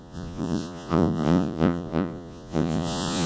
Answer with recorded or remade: remade